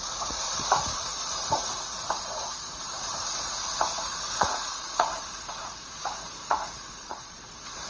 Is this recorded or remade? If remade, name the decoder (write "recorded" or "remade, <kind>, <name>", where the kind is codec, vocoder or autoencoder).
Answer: remade, vocoder, Vocos